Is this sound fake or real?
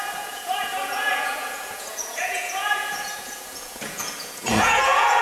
fake